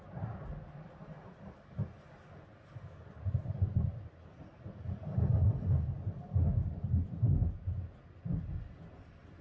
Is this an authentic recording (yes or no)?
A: yes